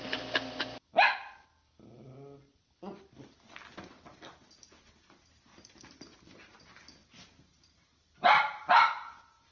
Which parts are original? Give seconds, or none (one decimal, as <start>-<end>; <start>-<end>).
0.0-7.0; 8.8-9.5